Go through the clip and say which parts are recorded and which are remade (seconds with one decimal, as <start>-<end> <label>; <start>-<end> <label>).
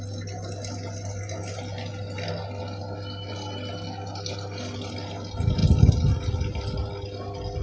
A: 0.0-7.6 recorded